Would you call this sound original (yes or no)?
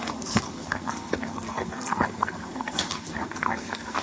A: no